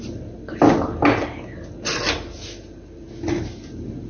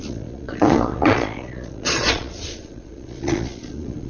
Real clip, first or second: first